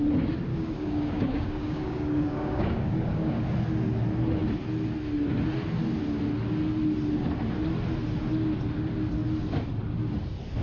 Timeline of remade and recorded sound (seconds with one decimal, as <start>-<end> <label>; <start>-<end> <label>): 0.0-0.5 recorded; 0.5-3.4 remade; 3.4-10.6 recorded

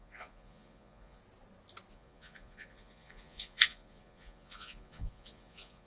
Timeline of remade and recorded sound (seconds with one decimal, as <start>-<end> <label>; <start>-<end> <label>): 0.0-1.2 remade; 1.2-1.9 recorded; 1.9-5.9 remade

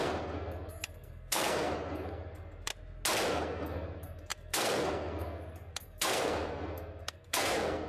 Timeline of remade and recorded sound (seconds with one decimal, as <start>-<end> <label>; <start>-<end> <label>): 0.0-2.7 remade; 2.7-3.3 recorded; 3.3-7.9 remade

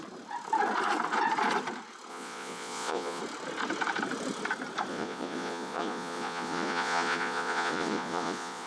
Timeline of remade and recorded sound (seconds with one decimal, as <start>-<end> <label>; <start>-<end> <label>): 0.0-2.1 recorded; 2.1-3.2 remade; 3.2-4.9 recorded; 4.9-8.7 remade

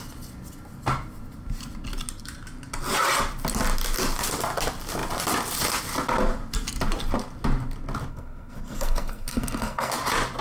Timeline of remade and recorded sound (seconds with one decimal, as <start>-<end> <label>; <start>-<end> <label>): 0.0-8.1 recorded; 8.1-9.9 remade; 9.9-10.4 recorded

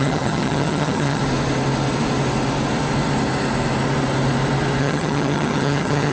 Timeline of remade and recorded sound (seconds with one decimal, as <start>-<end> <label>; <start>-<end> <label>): 0.0-1.2 remade; 1.2-4.8 recorded; 4.8-6.1 remade